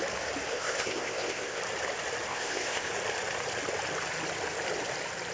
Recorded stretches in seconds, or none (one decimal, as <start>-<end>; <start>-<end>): 0.0-0.5; 1.6-2.3; 2.9-5.3